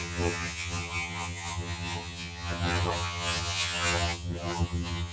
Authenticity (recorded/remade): remade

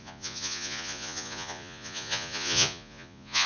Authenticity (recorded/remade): remade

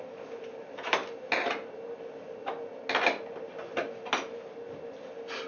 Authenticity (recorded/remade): recorded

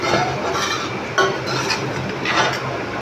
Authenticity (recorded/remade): recorded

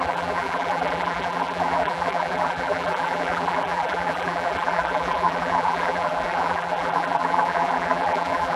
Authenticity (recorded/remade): remade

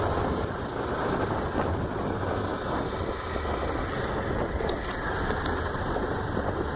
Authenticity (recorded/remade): recorded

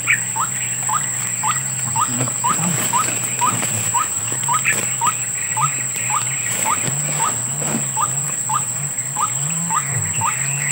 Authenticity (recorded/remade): remade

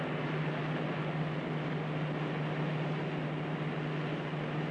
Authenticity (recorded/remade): recorded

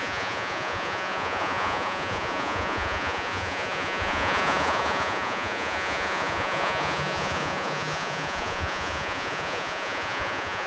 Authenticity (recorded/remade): remade